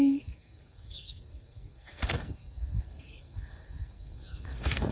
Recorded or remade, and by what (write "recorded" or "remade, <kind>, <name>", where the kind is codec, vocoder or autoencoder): remade, codec, SNAC